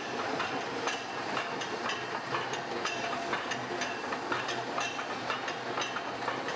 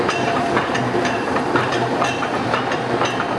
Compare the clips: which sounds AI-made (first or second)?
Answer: second